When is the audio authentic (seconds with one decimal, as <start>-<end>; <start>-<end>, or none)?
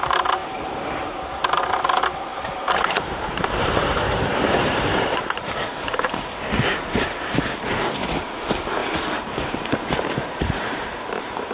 0.0-0.4; 1.3-2.3; 6.4-8.8